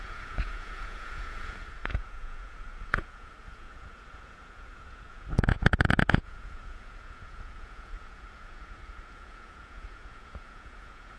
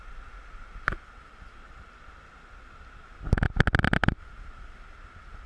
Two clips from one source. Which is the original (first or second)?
second